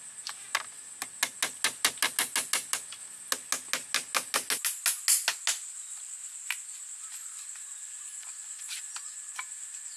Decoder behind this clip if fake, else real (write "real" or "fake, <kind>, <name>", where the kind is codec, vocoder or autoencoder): real